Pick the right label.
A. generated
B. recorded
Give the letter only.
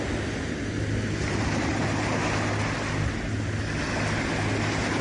B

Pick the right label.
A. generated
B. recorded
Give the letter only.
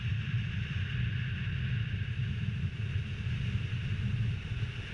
B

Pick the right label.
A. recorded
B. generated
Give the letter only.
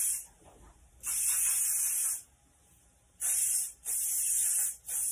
A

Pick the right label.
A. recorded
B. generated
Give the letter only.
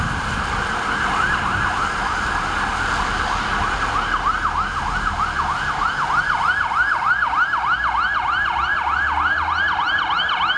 A